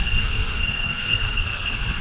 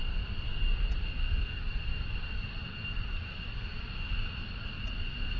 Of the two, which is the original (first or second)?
second